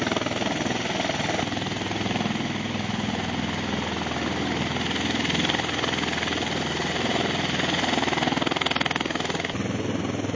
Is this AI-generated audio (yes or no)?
no